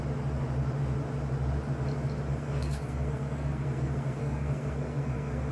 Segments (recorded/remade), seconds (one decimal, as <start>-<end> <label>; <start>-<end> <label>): 0.0-2.3 recorded; 2.3-5.5 remade